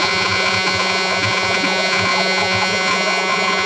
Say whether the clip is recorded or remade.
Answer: remade